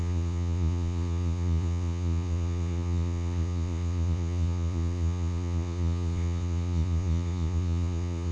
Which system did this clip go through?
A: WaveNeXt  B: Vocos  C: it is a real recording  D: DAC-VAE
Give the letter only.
B